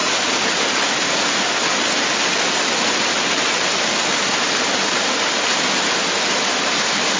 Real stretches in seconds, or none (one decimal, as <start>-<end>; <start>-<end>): 0.0-7.2